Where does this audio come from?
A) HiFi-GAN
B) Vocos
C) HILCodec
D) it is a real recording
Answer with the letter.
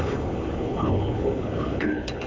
C